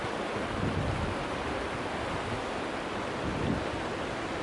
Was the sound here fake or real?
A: real